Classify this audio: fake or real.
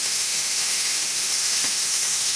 fake